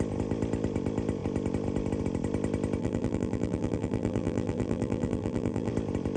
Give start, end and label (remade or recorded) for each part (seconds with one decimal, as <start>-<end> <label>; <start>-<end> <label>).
0.0-2.8 recorded; 2.8-5.7 remade; 5.7-6.2 recorded